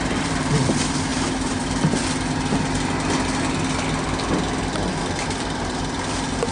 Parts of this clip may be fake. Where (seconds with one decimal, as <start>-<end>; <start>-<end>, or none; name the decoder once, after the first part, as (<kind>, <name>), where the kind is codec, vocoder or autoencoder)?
0.0-1.1 (vocoder, BigVGAN v2); 5.0-6.5